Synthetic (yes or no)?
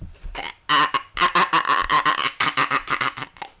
no